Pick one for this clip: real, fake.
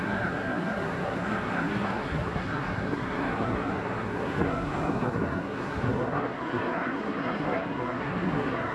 fake